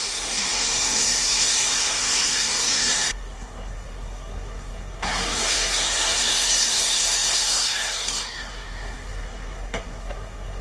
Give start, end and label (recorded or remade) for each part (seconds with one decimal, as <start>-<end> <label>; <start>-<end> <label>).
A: 0.0-10.6 remade